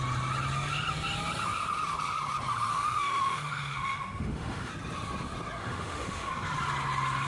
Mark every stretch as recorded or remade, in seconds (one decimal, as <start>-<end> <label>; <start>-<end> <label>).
0.0-2.7 recorded; 2.7-4.7 remade; 4.7-5.6 recorded; 5.6-6.3 remade; 6.3-7.3 recorded